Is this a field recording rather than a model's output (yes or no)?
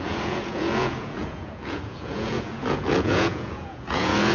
no